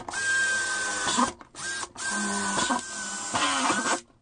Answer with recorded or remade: recorded